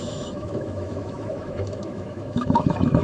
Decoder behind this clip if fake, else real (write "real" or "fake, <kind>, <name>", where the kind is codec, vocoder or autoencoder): fake, autoencoder, DAC-VAE